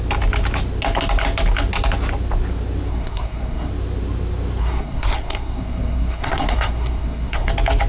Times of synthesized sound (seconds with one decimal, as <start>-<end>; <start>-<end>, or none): 2.9-3.7; 4.6-7.5